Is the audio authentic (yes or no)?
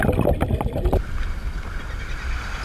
yes